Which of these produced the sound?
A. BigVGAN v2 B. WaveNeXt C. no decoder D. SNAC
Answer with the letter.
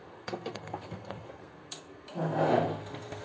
D